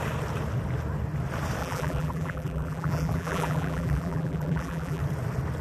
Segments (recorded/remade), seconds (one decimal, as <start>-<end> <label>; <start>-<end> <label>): 0.0-1.6 recorded; 1.6-5.0 remade; 5.0-5.6 recorded